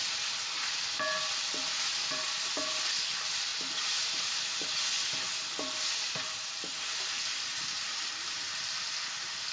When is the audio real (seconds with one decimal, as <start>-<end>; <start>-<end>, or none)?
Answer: 0.0-7.5; 8.5-9.5